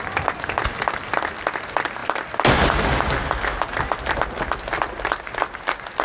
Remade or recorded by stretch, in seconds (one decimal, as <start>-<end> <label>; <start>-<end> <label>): 0.0-6.0 recorded